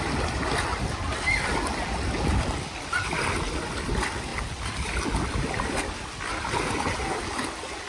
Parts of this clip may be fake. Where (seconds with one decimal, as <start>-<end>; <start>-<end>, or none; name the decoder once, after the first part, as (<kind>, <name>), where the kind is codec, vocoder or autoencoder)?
none